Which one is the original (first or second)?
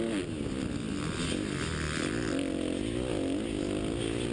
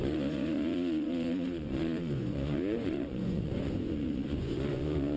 first